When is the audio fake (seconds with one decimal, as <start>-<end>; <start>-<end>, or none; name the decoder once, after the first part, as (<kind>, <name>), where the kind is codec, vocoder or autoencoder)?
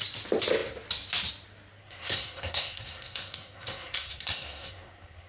1.8-5.3 (codec, SNAC)